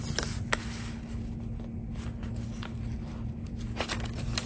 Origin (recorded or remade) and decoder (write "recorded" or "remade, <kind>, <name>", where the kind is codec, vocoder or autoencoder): recorded